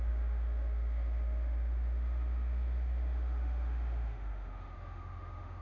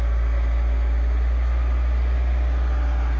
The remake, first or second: first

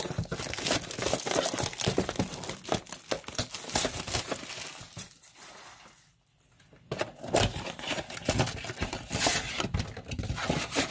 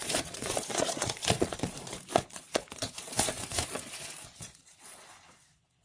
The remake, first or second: second